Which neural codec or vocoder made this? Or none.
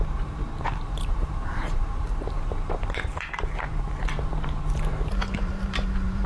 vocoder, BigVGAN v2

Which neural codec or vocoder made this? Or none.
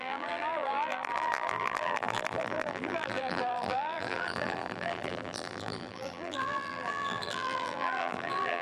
vocoder, BigVGAN v2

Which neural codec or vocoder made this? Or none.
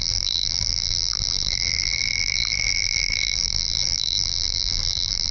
vocoder, BigVGAN v2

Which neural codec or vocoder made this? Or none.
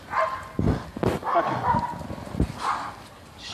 none